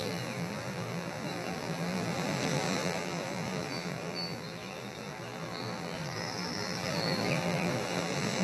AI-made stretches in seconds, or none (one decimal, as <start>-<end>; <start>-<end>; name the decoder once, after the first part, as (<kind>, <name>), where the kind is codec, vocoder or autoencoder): 0.0-8.4 (vocoder, BigVGAN v2)